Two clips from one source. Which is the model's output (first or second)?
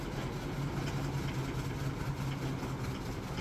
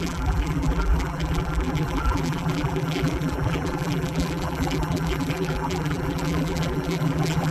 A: second